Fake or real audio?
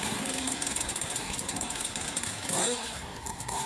fake